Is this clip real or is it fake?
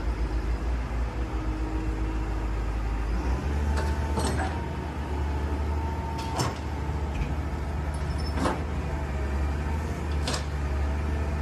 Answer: real